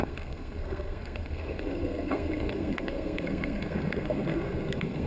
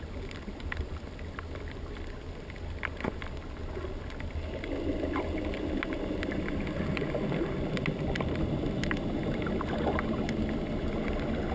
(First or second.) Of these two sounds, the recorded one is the second